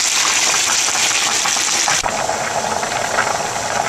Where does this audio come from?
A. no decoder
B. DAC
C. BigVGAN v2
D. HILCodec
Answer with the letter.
A